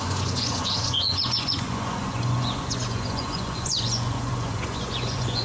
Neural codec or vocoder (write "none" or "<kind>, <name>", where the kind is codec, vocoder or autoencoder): vocoder, Vocos